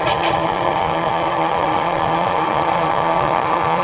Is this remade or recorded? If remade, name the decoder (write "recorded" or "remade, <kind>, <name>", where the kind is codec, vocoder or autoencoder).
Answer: remade, vocoder, Vocos